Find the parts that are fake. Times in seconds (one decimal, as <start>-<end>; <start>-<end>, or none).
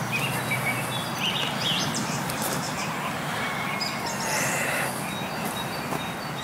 1.0-4.8